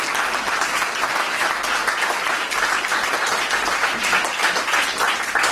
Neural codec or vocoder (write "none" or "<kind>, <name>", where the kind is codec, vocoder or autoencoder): none